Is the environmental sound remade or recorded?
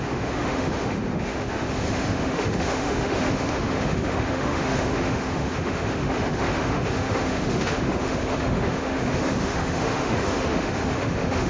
remade